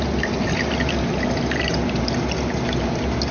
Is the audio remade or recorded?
recorded